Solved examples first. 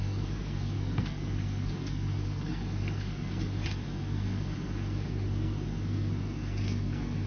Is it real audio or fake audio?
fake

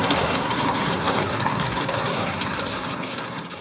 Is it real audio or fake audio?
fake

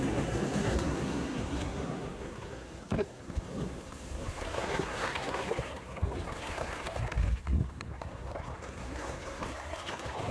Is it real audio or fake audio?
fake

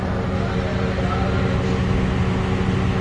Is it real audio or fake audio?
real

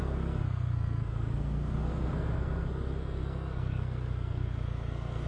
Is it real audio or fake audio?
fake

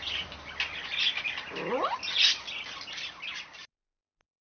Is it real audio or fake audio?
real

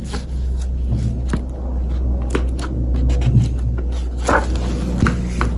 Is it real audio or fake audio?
real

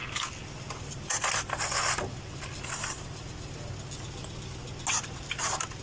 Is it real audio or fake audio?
real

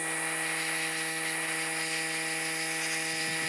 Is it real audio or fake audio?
real